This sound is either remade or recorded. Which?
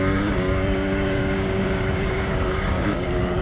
remade